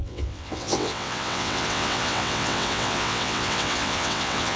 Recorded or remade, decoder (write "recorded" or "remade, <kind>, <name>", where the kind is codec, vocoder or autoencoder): remade, vocoder, WaveNeXt